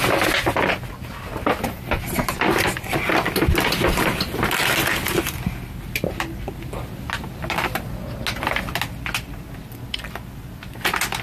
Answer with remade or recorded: recorded